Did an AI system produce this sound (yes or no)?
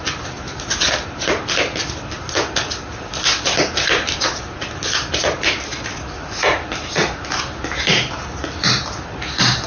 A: no